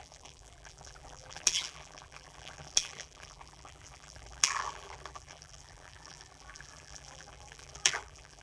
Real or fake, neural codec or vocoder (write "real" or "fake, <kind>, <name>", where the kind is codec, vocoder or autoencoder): fake, vocoder, BigVGAN v2